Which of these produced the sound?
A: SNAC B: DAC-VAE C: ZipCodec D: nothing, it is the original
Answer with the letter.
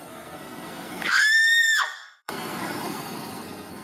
A